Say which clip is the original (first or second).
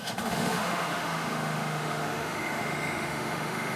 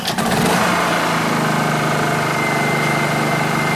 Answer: second